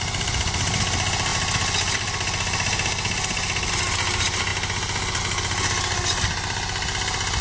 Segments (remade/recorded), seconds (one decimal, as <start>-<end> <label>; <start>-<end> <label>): 0.0-7.4 recorded